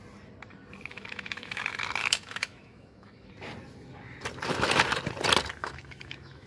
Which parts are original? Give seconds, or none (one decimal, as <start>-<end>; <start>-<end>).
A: 0.0-0.9; 1.6-2.0; 3.3-5.6